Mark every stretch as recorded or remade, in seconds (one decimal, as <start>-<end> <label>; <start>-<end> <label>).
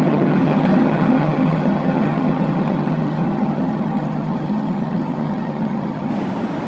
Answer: 0.0-6.1 remade; 6.1-6.7 recorded